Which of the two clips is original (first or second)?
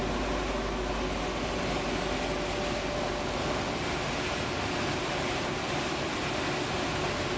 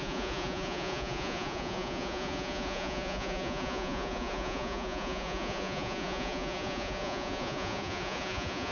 first